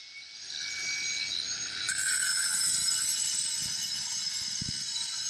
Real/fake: real